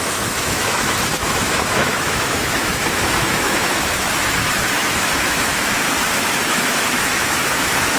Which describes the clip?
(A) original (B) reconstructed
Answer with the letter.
B